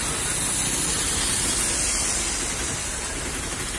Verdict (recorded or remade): recorded